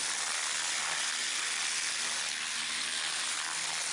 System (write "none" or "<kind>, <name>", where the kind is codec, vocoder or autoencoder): none